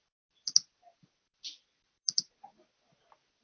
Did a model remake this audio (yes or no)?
no